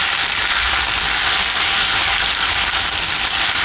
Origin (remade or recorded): recorded